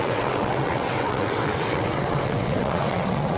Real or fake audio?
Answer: fake